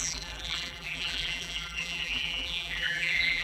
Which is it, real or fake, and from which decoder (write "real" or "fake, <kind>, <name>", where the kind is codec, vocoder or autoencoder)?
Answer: fake, vocoder, BigVGAN v2